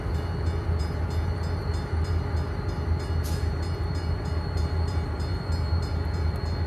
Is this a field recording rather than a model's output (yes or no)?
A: yes